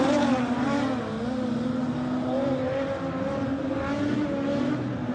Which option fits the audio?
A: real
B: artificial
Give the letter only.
A